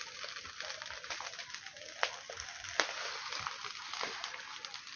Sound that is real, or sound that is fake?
real